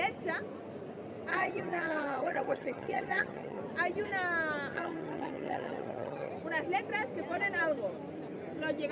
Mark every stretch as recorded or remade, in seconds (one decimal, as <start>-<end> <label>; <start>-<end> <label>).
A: 0.0-1.3 recorded; 1.3-3.6 remade; 3.6-4.7 recorded; 4.7-6.3 remade; 6.3-8.9 recorded